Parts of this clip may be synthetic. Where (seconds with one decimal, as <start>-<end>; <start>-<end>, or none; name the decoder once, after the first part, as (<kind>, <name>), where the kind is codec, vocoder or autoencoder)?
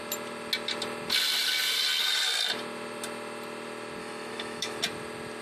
4.0-4.8 (autoencoder, DAC-VAE)